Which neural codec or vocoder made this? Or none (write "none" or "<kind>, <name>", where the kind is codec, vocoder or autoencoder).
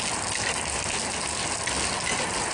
none